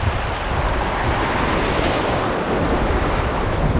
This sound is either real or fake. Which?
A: real